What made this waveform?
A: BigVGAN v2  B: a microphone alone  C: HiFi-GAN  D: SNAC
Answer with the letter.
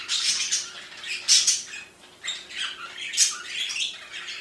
B